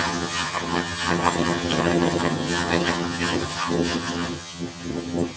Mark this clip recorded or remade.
remade